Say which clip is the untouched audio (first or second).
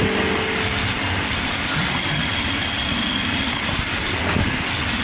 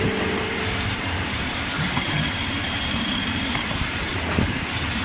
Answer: first